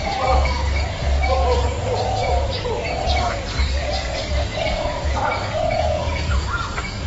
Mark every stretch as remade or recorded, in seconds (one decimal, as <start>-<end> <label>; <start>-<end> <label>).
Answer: 0.0-2.9 remade; 2.9-3.6 recorded; 3.6-7.1 remade